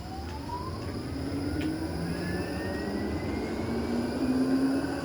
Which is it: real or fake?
real